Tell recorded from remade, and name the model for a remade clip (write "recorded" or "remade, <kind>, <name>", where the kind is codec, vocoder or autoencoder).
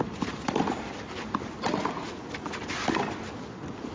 recorded